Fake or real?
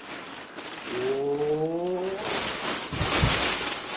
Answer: real